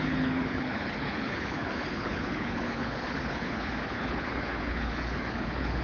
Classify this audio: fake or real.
fake